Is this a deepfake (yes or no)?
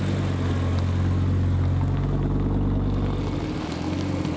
no